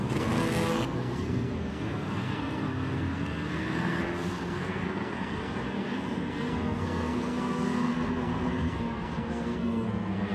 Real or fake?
fake